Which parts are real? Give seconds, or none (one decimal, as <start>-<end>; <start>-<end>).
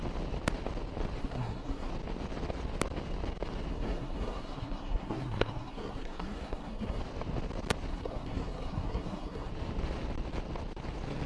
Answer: 0.0-1.2; 1.9-3.7; 7.0-7.9; 9.5-11.3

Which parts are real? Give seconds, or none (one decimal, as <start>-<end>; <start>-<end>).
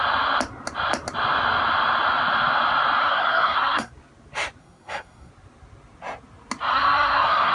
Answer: 0.0-3.0; 3.9-4.6; 5.3-6.7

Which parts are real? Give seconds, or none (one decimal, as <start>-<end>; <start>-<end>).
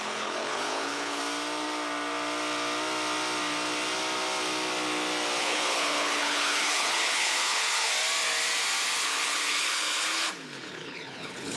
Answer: 1.2-5.4; 7.9-9.0